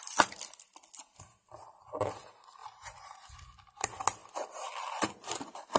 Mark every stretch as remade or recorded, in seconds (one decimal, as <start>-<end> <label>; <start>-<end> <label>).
0.0-2.6 recorded; 2.6-3.8 remade; 3.8-4.2 recorded; 4.2-4.9 remade; 4.9-5.8 recorded

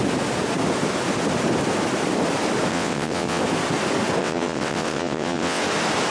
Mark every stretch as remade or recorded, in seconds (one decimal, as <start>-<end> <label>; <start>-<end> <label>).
0.0-2.7 recorded; 2.7-3.4 remade; 3.4-4.2 recorded; 4.2-5.6 remade; 5.6-6.1 recorded

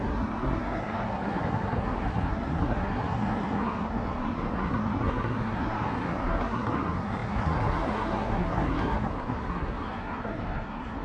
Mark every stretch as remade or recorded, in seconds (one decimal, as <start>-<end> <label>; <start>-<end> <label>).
0.0-11.0 remade